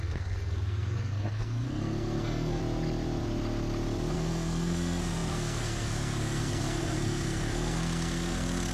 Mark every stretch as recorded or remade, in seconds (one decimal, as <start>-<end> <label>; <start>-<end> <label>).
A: 0.0-2.6 remade; 2.6-4.1 recorded; 4.1-8.7 remade

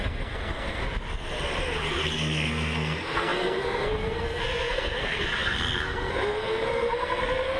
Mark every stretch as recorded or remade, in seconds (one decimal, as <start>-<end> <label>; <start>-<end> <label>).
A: 0.0-0.8 remade; 0.8-2.1 recorded; 2.1-7.6 remade

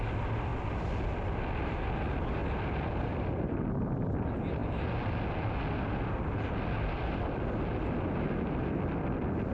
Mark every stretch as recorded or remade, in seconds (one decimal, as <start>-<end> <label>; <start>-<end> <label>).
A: 0.0-9.5 recorded